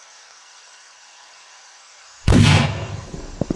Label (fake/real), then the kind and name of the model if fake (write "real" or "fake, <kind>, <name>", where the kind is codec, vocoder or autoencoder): fake, codec, SNAC